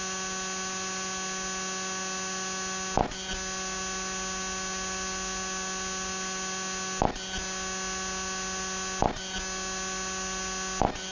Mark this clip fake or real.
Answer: real